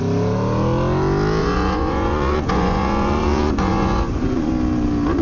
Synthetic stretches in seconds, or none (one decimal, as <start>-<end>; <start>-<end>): 1.4-4.5